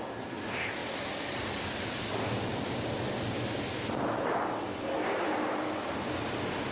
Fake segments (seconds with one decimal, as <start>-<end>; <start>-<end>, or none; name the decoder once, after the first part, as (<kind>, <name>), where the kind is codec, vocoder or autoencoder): none